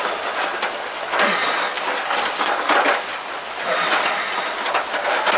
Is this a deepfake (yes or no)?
no